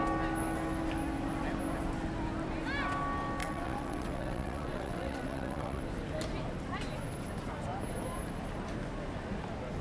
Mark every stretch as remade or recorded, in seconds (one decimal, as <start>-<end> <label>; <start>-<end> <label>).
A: 0.0-3.4 recorded; 3.4-5.8 remade; 5.8-9.8 recorded